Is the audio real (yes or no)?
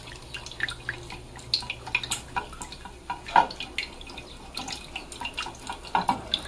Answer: yes